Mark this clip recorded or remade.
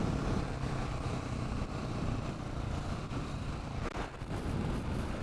recorded